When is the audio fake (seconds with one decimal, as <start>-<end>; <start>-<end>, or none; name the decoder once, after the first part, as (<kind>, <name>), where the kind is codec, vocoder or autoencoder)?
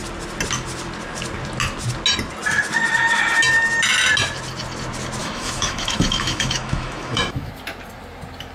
5.2-7.5 (autoencoder, DAC-VAE)